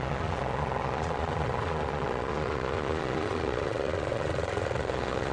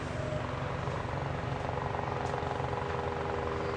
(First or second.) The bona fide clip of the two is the second